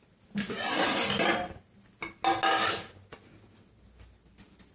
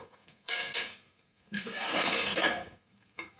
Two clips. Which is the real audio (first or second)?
first